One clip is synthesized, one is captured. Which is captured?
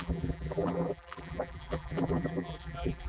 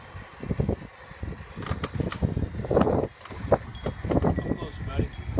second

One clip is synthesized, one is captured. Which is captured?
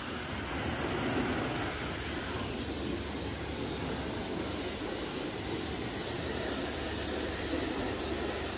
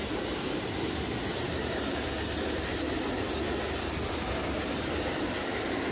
first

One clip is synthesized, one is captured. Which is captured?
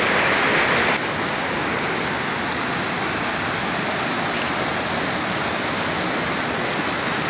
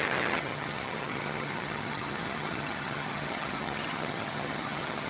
first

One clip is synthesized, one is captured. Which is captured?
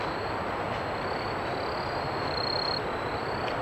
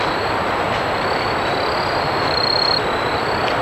first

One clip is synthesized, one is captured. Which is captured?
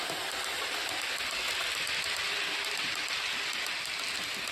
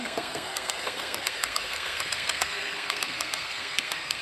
first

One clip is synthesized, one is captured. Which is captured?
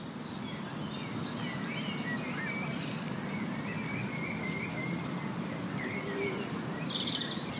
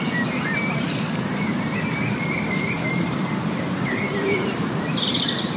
first